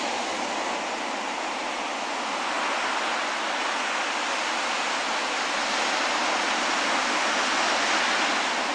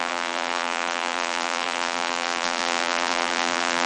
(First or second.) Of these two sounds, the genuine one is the first